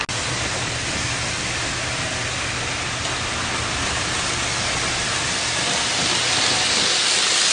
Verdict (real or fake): real